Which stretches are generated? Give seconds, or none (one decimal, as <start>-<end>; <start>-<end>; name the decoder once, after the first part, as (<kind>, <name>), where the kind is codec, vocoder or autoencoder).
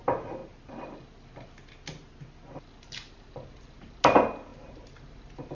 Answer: none